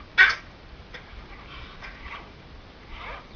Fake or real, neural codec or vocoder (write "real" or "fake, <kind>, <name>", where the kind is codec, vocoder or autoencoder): real